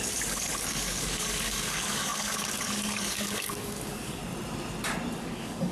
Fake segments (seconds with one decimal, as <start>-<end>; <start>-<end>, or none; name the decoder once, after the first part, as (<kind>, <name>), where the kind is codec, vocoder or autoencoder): 0.0-4.2 (codec, DAC); 5.2-5.7